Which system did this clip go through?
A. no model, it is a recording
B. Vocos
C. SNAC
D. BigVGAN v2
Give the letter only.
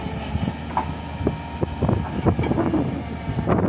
A